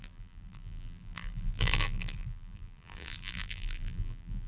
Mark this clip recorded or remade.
remade